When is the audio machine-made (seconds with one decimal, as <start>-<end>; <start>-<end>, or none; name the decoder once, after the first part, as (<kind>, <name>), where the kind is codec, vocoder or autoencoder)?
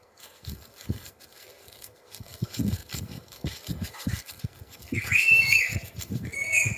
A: 0.0-6.8 (codec, SNAC)